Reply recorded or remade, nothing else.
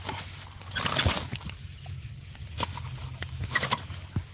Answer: recorded